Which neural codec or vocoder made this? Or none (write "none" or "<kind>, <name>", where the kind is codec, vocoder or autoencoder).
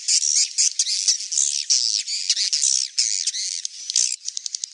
none